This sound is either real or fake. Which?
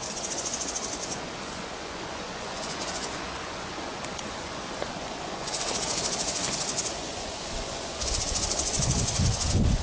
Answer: fake